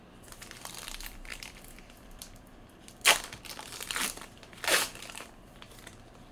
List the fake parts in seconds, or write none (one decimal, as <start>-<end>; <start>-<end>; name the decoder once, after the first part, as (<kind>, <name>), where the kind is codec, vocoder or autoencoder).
0.6-6.3 (vocoder, BigVGAN v2)